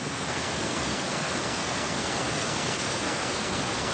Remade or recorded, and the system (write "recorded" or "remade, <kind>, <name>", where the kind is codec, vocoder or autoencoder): remade, codec, SNAC